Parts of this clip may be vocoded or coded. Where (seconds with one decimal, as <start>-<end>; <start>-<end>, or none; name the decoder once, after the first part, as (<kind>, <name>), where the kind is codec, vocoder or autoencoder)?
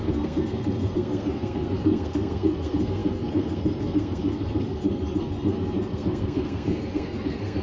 0.0-7.6 (codec, SNAC)